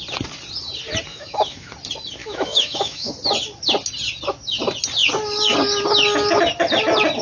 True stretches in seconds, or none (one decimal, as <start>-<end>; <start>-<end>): 0.0-1.1; 1.7-2.2; 3.1-7.2

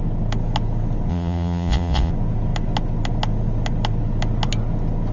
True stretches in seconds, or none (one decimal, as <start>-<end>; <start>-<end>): 0.0-1.1; 2.1-5.1